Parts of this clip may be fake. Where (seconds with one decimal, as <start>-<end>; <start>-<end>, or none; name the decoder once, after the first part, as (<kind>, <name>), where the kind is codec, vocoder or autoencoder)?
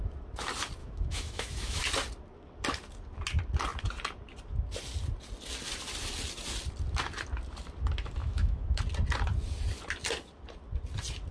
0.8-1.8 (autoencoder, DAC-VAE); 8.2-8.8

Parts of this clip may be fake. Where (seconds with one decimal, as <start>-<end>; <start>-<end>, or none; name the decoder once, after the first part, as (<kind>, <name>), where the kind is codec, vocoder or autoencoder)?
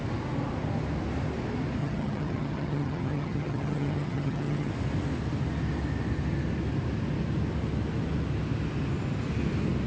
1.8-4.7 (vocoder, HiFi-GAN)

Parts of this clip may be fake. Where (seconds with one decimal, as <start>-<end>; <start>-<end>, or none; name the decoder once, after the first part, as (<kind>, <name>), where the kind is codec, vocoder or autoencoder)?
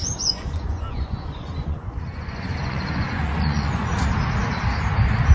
0.0-3.9 (vocoder, Vocos)